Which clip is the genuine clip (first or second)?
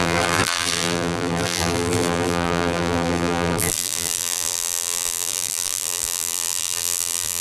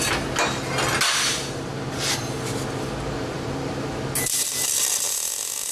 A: second